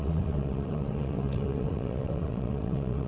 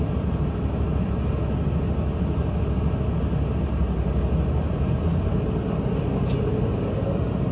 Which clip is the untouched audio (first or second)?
second